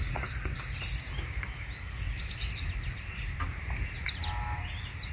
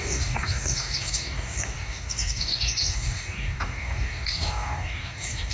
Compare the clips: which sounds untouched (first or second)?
first